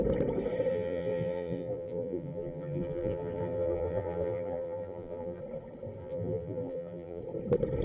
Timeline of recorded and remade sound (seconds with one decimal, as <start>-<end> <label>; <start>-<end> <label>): 0.0-0.7 recorded; 0.7-5.4 remade; 5.4-6.0 recorded; 6.0-7.2 remade; 7.2-7.8 recorded